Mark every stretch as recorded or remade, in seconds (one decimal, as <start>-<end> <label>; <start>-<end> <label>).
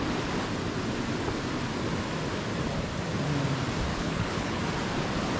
0.0-3.9 recorded; 3.9-4.6 remade; 4.6-5.4 recorded